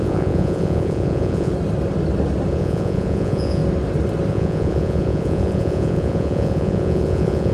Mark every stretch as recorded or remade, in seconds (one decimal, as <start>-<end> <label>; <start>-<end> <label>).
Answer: 0.0-1.5 remade; 1.5-2.5 recorded; 2.5-3.6 remade; 3.6-4.3 recorded; 4.3-7.5 remade